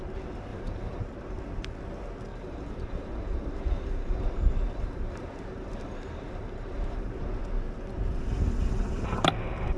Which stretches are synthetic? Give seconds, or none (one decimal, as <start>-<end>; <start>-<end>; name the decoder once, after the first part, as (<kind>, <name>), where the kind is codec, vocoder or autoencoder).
0.5-1.0 (vocoder, BigVGAN v2); 2.3-7.1